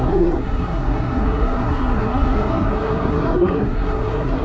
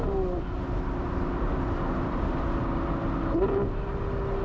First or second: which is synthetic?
first